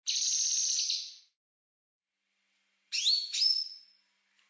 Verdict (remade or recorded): recorded